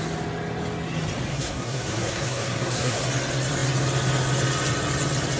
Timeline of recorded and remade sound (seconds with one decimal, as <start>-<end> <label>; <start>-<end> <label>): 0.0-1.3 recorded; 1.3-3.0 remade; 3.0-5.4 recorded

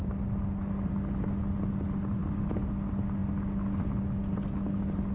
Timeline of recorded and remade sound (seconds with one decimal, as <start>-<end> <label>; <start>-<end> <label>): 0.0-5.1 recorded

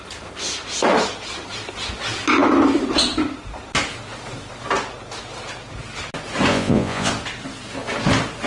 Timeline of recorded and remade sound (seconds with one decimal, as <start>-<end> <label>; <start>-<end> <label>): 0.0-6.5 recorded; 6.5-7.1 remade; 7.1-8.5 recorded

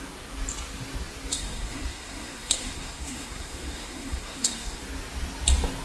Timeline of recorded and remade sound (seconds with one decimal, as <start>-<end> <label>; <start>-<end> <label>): 0.0-1.3 recorded; 1.3-4.8 remade; 4.8-5.8 recorded

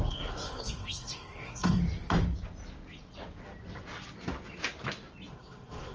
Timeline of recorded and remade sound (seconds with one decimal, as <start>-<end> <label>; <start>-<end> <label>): 0.0-1.8 remade; 1.8-5.3 recorded; 5.3-5.9 remade